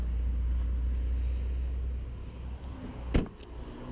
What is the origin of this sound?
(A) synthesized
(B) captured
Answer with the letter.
B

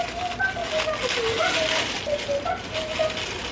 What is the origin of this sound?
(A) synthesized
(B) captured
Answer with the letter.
B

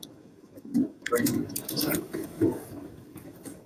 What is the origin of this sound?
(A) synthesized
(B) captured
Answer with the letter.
A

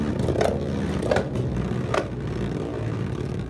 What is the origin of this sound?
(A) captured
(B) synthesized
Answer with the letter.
A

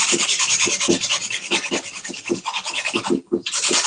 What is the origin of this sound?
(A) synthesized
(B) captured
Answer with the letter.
A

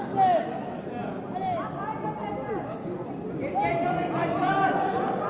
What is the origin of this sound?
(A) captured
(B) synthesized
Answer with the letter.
A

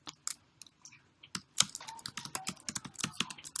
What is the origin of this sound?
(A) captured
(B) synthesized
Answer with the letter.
A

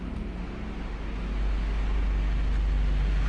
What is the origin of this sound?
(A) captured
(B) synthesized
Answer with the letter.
A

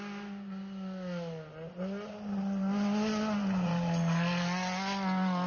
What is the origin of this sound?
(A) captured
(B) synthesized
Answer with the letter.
A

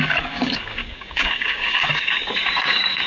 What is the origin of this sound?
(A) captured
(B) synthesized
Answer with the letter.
B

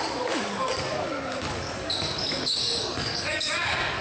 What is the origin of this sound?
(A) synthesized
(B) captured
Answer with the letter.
A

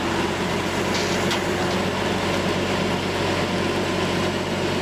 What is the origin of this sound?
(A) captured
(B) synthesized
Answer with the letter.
A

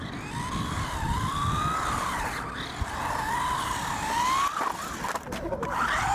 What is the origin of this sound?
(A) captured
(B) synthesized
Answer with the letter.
A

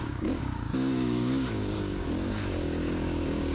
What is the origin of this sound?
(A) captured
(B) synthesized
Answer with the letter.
B